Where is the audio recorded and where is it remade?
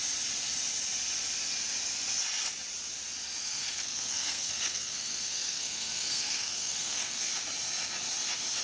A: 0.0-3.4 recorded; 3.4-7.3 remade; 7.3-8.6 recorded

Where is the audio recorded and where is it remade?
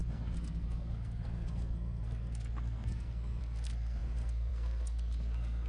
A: 0.0-5.7 remade